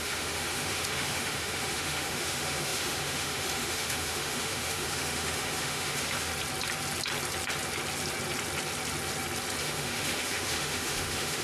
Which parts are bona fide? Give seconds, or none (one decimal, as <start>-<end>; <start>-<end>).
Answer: 6.3-9.6